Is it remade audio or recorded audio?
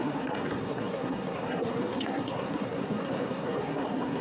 remade